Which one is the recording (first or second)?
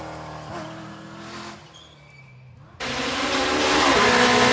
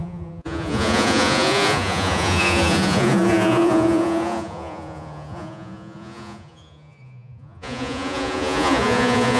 first